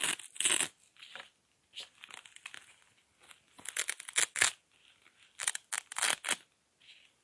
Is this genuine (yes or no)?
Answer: yes